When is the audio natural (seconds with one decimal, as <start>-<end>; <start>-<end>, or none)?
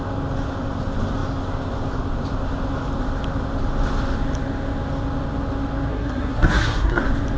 0.0-5.9; 7.0-7.4